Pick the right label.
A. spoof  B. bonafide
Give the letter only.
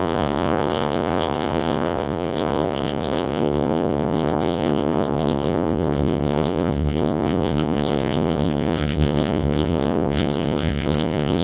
A